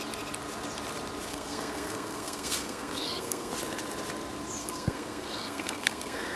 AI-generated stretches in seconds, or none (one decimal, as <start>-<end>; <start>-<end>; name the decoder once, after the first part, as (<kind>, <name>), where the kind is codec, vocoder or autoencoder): 1.3-3.5 (codec, SNAC); 4.6-6.4